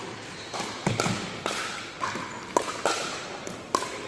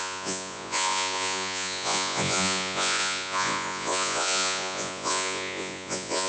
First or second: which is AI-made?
second